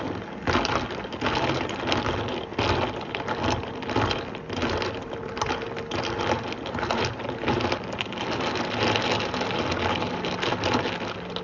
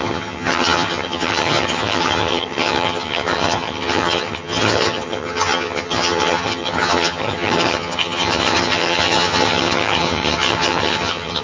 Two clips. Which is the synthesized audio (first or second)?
second